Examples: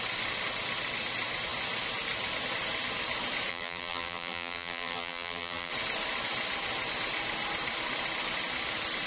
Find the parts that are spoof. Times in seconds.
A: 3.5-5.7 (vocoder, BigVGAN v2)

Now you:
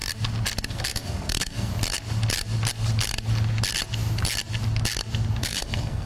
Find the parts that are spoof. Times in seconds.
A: 0.7-1.7 (codec, SNAC); 5.4-6.1

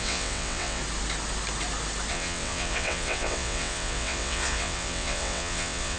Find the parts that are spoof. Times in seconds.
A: 0.0-0.8 (vocoder, WaveNeXt); 2.1-6.0

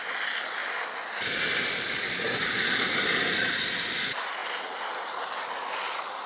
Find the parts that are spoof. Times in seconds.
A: none

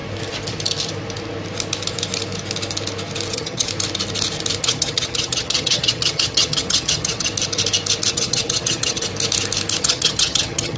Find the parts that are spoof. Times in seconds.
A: 3.3-3.7 (vocoder, HiFi-GAN); 4.6-7.3; 8.1-9.1; 9.8-10.8